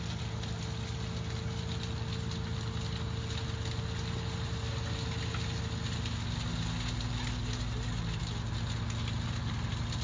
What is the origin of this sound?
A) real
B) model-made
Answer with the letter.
A